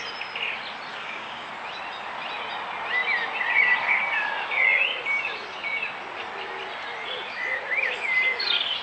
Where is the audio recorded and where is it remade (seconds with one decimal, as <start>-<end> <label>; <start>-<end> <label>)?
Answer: 0.0-0.9 recorded; 0.9-1.5 remade; 1.5-8.8 recorded